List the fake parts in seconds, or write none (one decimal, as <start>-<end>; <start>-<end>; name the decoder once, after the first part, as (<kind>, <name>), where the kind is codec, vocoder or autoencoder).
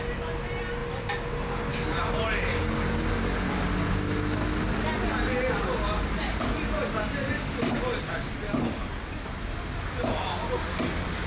none